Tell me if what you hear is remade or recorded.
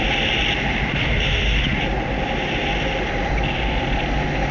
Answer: recorded